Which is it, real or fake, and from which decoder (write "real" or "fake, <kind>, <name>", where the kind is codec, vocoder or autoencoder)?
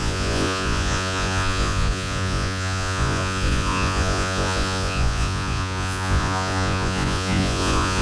fake, vocoder, Vocos